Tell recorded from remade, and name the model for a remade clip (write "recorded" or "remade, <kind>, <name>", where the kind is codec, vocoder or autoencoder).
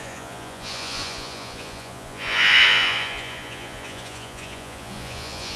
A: remade, vocoder, Vocos